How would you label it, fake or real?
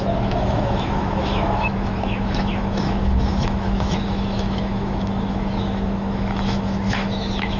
fake